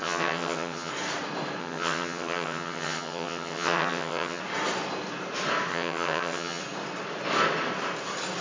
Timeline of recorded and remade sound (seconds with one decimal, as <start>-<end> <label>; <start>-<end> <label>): 0.0-0.9 remade; 0.9-1.6 recorded; 1.6-4.4 remade; 4.4-5.7 recorded; 5.7-6.6 remade; 6.6-8.4 recorded